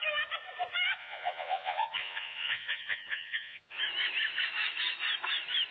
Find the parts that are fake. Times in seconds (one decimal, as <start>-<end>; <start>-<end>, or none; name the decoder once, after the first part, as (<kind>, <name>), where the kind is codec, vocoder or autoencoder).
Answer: 1.0-3.8 (vocoder, Vocos)

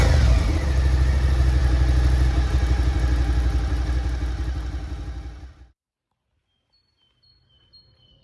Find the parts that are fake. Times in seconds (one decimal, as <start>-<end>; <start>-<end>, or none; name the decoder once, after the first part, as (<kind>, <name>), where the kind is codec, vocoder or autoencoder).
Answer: none

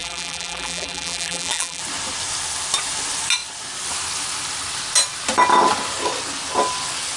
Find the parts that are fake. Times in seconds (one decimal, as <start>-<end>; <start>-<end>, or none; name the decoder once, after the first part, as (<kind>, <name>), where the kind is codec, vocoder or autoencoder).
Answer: 0.0-1.8 (vocoder, BigVGAN v2)

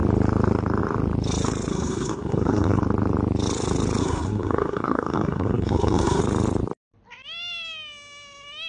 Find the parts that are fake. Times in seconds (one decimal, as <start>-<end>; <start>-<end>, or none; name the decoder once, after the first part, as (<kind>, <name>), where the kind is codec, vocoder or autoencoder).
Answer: 1.7-2.8 (codec, SNAC); 4.0-6.2

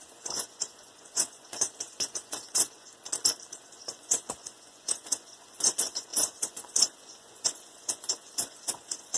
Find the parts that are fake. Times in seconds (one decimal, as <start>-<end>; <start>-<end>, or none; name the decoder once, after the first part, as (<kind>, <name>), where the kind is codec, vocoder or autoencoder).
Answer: 0.0-2.9 (vocoder, Vocos); 3.5-9.2

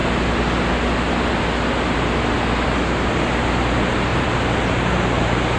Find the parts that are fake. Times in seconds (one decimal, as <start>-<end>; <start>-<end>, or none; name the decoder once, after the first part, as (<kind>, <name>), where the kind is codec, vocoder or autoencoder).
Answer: 4.1-5.6 (vocoder, BigVGAN v2)

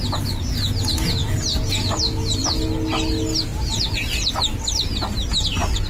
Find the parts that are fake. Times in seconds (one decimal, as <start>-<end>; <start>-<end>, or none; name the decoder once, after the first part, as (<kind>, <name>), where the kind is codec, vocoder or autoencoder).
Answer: none

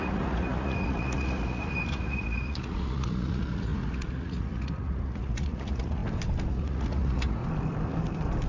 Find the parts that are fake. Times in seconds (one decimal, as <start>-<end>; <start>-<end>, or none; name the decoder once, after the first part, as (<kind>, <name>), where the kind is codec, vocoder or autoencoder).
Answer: 0.0-6.0 (vocoder, Vocos); 6.5-7.4